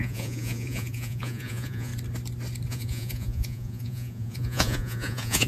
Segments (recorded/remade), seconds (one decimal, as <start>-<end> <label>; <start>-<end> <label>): 0.0-1.9 remade; 1.9-2.7 recorded; 2.7-5.5 remade